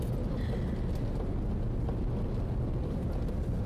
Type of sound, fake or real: real